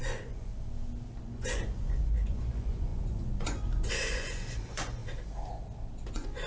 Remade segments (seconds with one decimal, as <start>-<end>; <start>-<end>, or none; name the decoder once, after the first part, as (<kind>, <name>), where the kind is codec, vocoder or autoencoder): 0.0-0.5 (vocoder, Vocos); 1.2-5.0; 6.1-6.5